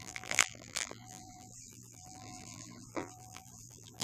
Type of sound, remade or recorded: remade